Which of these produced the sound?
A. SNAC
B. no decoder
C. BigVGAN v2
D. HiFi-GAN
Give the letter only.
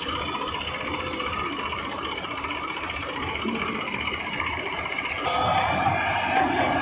C